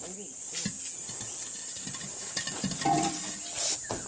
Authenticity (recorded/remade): recorded